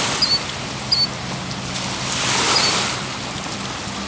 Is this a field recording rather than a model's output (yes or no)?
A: yes